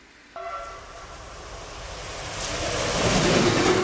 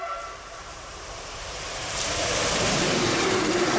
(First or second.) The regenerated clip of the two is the second